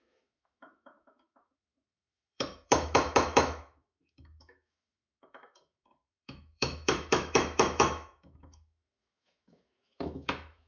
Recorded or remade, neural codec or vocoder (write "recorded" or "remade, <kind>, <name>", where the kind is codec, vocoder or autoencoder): remade, autoencoder, DAC-VAE